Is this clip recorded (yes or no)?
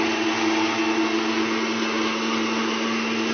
yes